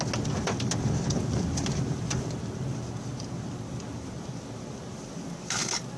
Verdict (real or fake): real